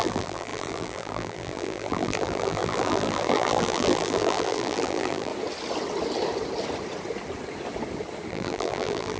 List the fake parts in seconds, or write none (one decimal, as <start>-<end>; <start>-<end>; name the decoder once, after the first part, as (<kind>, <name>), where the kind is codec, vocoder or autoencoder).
0.0-5.3 (vocoder, BigVGAN v2); 8.3-9.2